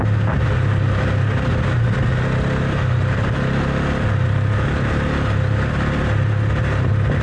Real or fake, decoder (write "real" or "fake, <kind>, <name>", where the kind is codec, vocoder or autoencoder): real